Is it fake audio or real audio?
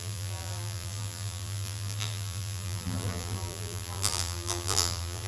fake